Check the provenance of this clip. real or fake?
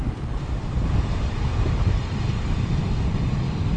fake